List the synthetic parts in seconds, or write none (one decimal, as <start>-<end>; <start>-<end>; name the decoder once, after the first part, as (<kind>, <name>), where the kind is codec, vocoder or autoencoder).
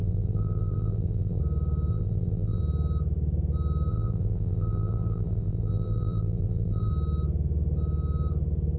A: 0.0-1.4 (vocoder, BigVGAN v2); 1.9-2.6; 3.9-6.9